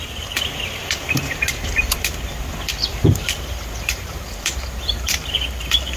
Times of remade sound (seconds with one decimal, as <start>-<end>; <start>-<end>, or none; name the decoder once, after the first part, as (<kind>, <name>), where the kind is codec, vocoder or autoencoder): 2.9-4.2 (vocoder, BigVGAN v2)